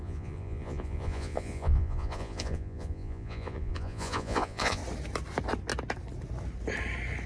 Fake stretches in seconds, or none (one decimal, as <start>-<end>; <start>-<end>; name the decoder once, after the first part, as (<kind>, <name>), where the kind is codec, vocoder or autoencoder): 0.0-4.8 (vocoder, Vocos)